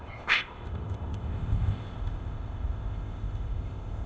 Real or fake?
fake